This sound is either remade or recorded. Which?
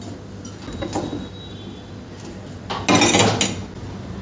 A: recorded